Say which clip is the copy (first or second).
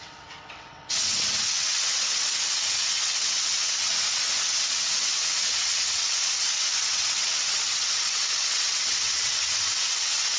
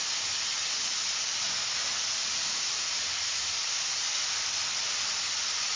first